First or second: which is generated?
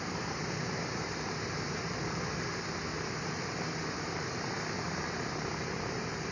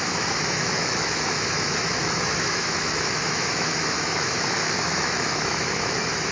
second